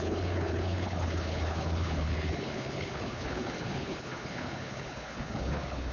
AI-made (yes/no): yes